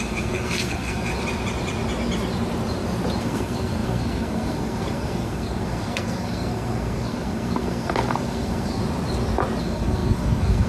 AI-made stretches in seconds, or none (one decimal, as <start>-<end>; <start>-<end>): 0.0-1.1; 3.2-8.8; 9.6-10.7